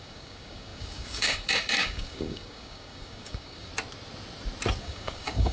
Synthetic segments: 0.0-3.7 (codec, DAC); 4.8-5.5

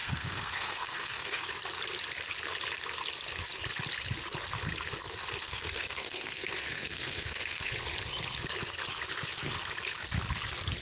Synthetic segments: 0.0-1.4 (codec, SNAC); 5.4-7.7

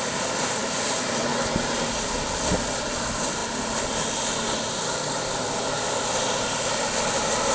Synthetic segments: 0.0-0.6 (vocoder, BigVGAN v2); 1.9-7.5